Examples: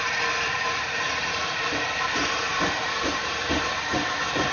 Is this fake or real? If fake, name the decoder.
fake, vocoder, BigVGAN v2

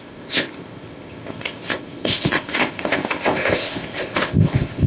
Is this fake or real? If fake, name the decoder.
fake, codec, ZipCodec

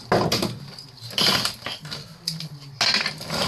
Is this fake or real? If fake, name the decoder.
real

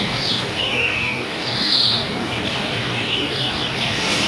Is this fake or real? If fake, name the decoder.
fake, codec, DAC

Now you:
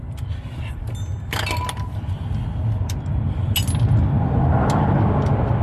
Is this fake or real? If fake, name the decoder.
real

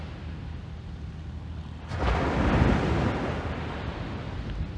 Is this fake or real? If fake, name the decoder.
real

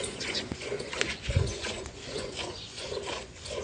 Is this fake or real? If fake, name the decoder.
fake, vocoder, Vocos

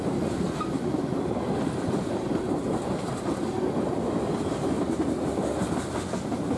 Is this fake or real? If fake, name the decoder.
real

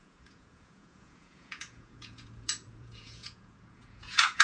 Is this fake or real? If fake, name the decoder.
fake, vocoder, Vocos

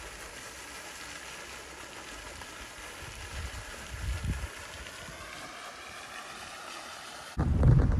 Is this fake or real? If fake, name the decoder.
real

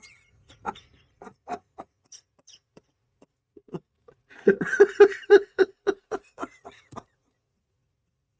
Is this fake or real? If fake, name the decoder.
fake, vocoder, Vocos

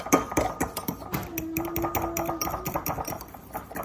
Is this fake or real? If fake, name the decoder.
real